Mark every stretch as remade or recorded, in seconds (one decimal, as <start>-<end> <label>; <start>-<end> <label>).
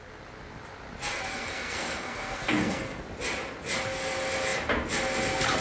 0.0-1.3 recorded; 1.3-3.0 remade; 3.0-5.6 recorded